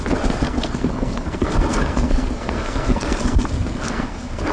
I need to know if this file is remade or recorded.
remade